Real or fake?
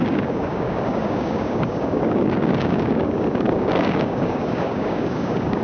fake